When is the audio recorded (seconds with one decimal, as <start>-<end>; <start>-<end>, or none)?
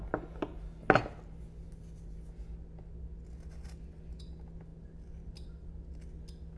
0.0-6.6